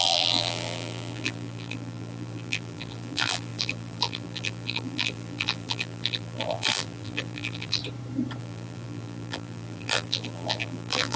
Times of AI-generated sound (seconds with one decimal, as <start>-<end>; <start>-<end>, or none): 0.0-7.8; 8.4-11.2